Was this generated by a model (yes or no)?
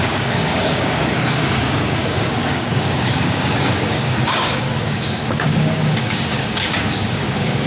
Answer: yes